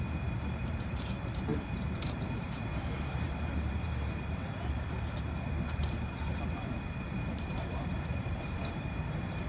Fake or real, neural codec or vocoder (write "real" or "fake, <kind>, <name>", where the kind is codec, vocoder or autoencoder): fake, vocoder, BigVGAN v2